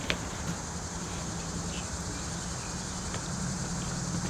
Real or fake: real